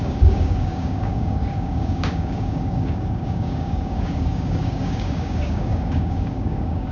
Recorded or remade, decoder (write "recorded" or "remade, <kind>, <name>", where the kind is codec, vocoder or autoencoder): remade, codec, DAC